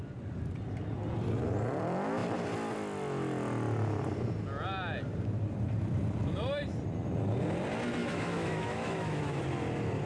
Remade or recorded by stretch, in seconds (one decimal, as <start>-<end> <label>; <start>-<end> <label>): 0.0-8.0 recorded; 8.0-9.4 remade; 9.4-10.1 recorded